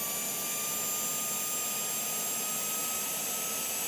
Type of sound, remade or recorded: recorded